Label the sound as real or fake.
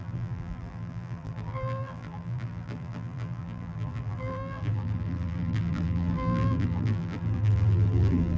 fake